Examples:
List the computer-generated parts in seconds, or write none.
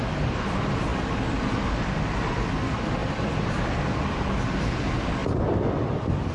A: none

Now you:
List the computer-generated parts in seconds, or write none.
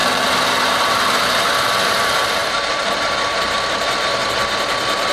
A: 0.0-0.5 (vocoder, BigVGAN v2); 2.4-4.3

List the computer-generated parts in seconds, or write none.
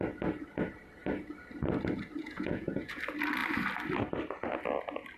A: 2.2-3.0 (vocoder, Vocos)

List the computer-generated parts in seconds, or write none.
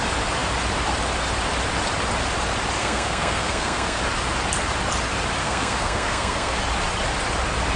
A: 2.8-4.0 (codec, SNAC); 5.4-6.6